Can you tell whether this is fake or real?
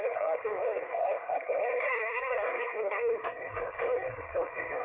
fake